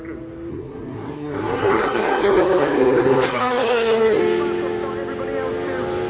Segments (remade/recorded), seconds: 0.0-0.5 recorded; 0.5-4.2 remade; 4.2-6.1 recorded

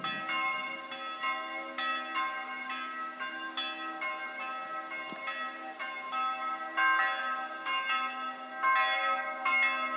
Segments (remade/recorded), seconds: 0.0-10.0 recorded

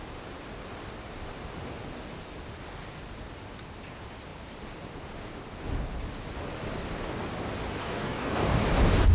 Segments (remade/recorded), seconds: 0.0-7.8 recorded; 7.8-8.6 remade; 8.6-9.1 recorded

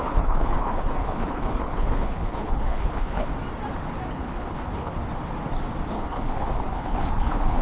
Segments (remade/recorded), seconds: 0.0-3.3 remade; 3.3-4.1 recorded; 4.1-4.9 remade; 4.9-5.9 recorded; 5.9-7.6 remade

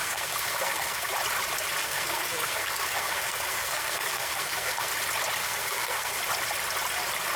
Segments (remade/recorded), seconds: 0.0-1.1 remade; 1.1-1.8 recorded; 1.8-4.9 remade; 4.9-5.4 recorded; 5.4-6.2 remade; 6.2-7.4 recorded

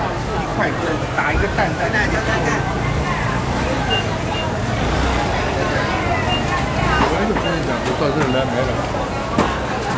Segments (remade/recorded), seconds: 0.0-0.5 recorded; 0.5-4.4 remade; 4.4-10.0 recorded